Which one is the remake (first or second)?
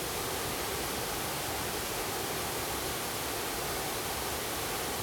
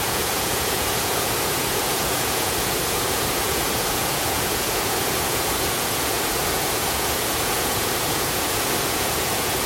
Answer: second